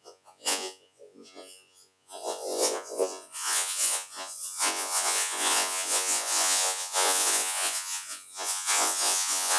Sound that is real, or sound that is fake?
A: fake